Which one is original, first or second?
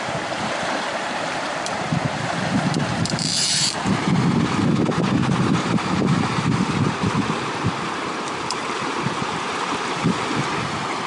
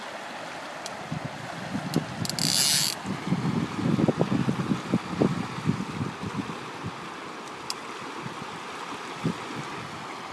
second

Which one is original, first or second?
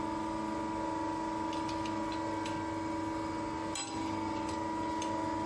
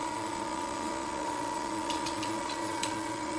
first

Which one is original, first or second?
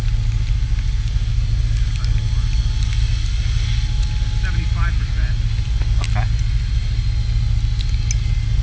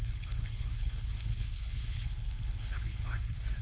first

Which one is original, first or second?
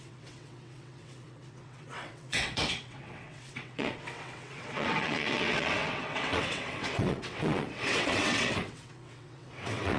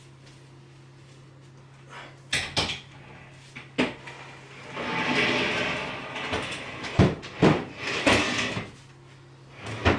second